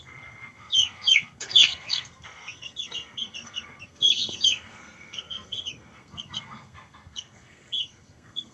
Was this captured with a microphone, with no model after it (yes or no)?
no